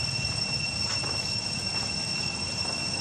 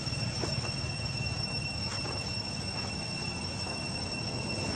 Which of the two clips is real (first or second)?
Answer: first